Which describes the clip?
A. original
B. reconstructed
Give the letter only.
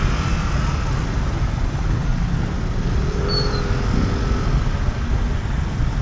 A